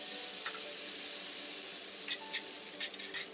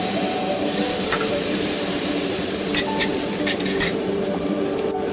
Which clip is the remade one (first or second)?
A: second